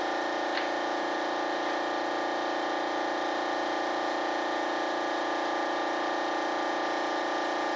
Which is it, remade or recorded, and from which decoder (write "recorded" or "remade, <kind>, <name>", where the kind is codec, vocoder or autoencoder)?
recorded